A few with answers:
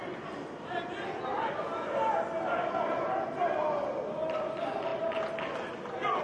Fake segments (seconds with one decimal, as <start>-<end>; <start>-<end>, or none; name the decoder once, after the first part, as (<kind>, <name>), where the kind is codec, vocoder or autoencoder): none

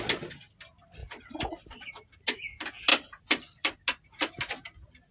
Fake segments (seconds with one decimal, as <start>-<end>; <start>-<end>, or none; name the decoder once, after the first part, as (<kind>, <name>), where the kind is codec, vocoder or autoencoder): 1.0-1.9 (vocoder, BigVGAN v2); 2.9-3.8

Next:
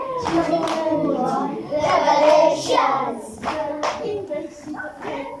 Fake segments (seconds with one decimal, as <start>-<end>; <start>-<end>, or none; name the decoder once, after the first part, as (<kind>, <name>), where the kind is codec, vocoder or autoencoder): none

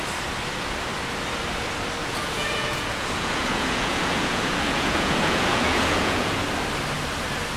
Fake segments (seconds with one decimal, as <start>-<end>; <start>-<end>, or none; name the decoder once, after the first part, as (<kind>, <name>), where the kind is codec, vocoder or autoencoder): 2.0-6.3 (vocoder, Vocos)

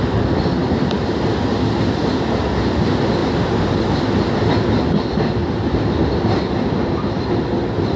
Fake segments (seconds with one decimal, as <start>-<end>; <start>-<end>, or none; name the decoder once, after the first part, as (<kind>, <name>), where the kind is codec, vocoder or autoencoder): none

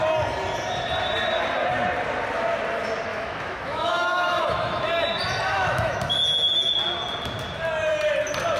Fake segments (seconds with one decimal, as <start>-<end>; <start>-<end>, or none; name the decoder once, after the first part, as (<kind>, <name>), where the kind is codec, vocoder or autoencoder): 3.1-4.9 (autoencoder, DAC-VAE); 5.5-6.0

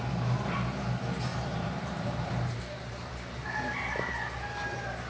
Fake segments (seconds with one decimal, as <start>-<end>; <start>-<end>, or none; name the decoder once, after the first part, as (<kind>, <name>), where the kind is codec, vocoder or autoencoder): 1.3-4.1 (vocoder, BigVGAN v2)

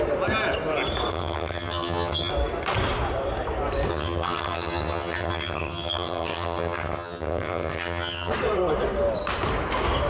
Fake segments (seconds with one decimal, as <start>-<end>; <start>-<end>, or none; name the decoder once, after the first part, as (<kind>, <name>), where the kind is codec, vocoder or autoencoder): 1.1-2.3 (vocoder, HiFi-GAN); 3.9-8.3